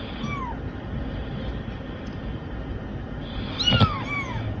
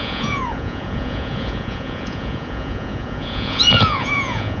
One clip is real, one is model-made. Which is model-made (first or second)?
second